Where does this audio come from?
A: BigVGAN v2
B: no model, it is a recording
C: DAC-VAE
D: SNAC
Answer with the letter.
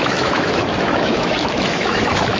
C